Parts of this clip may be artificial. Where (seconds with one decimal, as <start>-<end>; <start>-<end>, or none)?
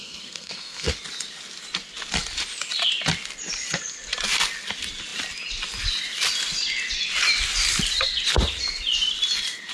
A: 0.0-0.9